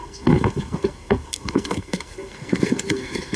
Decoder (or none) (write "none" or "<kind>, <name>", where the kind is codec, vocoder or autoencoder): codec, SNAC